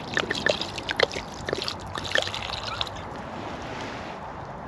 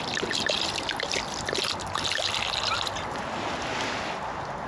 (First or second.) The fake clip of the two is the first